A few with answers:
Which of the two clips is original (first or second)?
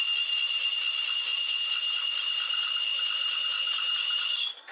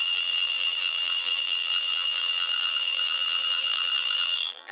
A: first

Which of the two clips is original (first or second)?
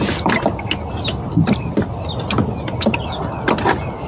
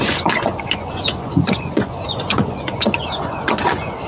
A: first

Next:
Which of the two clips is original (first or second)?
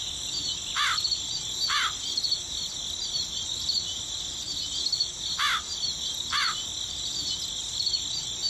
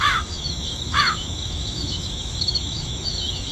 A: first